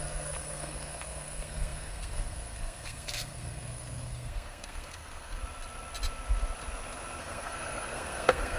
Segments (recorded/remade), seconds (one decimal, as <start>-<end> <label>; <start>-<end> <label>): 0.0-5.4 remade; 5.4-7.2 recorded; 7.2-8.6 remade